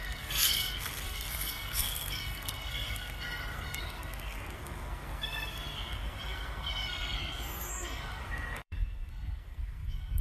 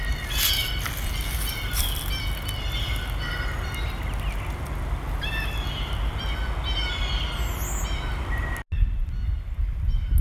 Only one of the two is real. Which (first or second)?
second